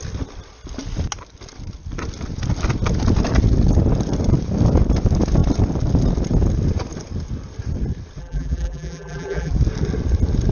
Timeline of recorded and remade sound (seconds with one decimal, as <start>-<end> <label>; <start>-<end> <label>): 0.0-8.2 recorded; 8.2-9.5 remade; 9.5-10.5 recorded